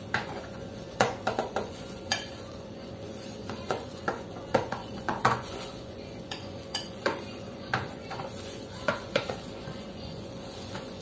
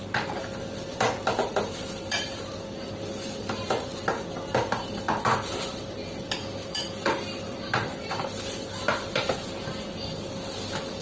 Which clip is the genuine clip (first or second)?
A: second